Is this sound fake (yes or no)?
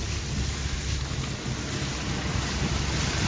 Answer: no